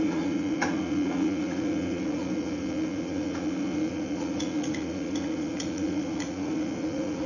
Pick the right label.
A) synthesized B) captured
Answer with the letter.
A